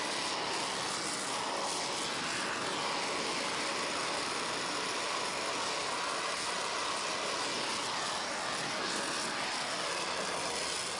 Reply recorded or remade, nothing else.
recorded